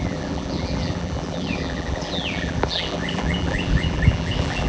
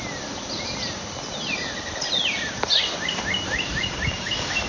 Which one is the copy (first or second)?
first